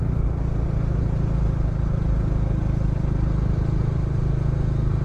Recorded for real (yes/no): yes